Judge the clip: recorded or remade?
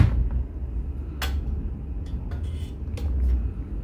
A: recorded